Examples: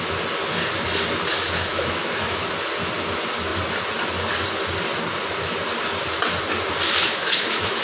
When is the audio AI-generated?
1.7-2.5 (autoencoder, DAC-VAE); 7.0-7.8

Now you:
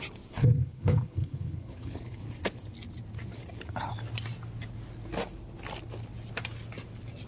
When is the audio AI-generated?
0.4-2.2 (codec, HILCodec)

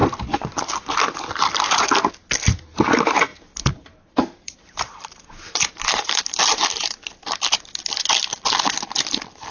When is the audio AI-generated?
3.3-6.2 (vocoder, BigVGAN v2)

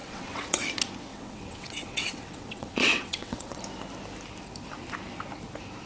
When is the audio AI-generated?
0.0-0.6 (vocoder, WaveNeXt); 1.1-3.6

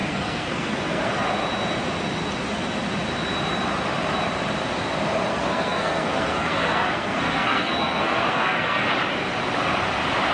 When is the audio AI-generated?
0.0-1.1 (codec, SNAC); 5.3-8.9

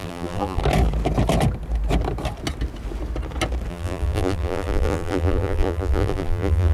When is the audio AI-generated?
0.0-0.6 (vocoder, BigVGAN v2); 3.7-6.7